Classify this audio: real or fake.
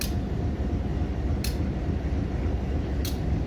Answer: real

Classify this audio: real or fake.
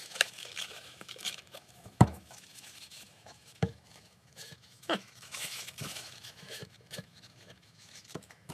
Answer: fake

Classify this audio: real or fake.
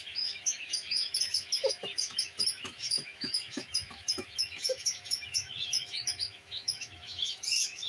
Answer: fake